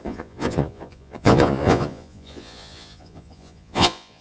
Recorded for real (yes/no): no